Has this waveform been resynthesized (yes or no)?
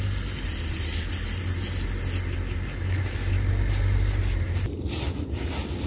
no